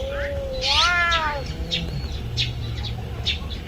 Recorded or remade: recorded